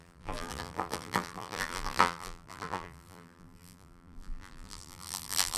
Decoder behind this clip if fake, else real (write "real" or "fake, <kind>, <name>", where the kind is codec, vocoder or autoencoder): fake, vocoder, BigVGAN v2